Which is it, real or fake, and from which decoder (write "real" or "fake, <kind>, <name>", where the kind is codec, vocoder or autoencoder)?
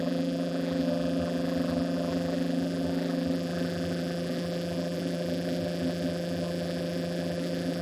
fake, vocoder, BigVGAN v2